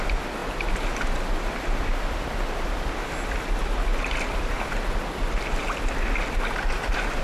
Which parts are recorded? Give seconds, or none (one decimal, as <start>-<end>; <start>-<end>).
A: 0.0-3.9; 4.6-7.2